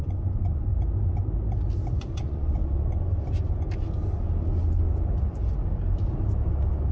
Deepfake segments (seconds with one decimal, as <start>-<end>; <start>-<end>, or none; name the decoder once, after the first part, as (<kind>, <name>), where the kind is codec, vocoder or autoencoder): 0.0-0.7 (vocoder, Vocos); 1.9-2.6